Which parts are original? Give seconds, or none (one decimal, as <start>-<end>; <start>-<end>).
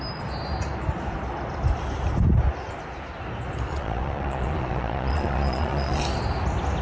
0.0-3.7; 6.0-6.8